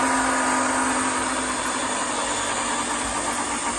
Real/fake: real